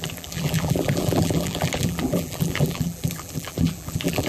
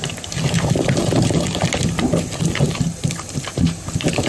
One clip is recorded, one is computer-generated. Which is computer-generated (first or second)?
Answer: first